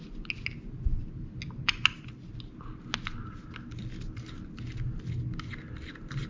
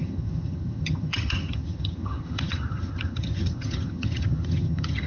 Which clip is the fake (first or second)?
second